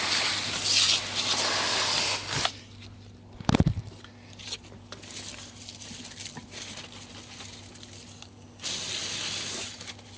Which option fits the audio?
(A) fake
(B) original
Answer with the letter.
B